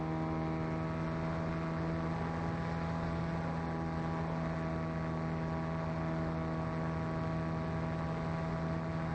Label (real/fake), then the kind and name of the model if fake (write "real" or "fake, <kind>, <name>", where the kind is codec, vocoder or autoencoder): real